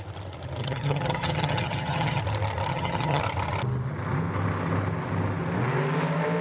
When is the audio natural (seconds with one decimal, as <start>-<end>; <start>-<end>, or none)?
0.0-0.6; 2.2-2.7; 3.2-6.4

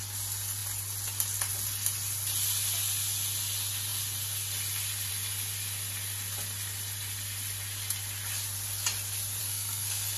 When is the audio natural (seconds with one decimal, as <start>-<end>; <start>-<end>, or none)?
0.0-9.4

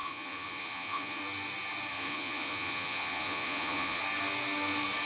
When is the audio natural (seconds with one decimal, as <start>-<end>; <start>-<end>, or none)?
1.2-1.9; 4.0-5.1

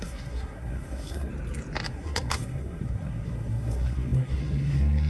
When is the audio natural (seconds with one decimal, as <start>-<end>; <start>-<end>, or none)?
1.3-1.9

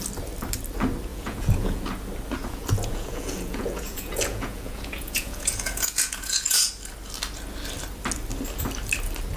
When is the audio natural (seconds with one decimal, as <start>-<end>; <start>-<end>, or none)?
0.0-1.1; 1.8-2.4; 6.7-9.4

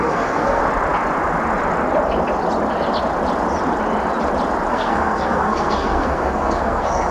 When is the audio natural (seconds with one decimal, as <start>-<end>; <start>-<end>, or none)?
0.6-4.7

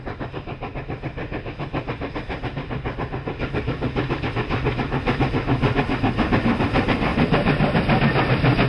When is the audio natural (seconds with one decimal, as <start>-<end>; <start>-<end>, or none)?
0.0-8.7

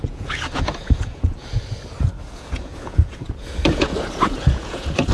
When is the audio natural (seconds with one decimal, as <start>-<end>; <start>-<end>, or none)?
1.4-2.2